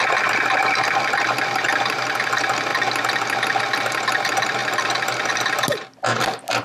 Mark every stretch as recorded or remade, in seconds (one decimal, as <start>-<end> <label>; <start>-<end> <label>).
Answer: 0.0-6.6 recorded